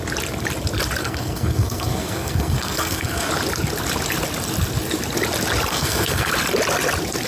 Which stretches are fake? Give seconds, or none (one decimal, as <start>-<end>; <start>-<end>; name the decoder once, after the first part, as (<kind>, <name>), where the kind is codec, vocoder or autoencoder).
1.0-3.3 (codec, SNAC); 5.7-6.3